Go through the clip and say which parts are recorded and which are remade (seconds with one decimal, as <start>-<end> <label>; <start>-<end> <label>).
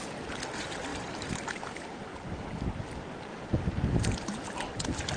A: 0.0-5.2 recorded